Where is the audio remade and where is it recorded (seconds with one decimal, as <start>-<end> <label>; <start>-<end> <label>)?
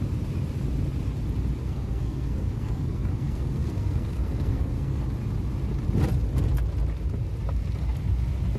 0.0-1.6 recorded; 1.6-5.0 remade; 5.0-8.6 recorded